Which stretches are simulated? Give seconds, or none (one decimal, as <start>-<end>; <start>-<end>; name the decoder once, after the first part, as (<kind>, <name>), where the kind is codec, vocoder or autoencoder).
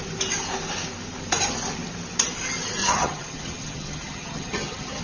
2.8-5.0 (vocoder, HiFi-GAN)